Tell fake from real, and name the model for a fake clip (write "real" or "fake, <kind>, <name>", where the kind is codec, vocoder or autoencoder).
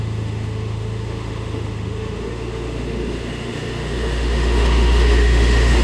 fake, autoencoder, DAC-VAE